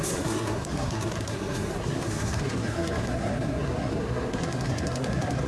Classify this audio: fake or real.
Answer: fake